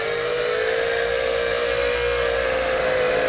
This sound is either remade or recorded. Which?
remade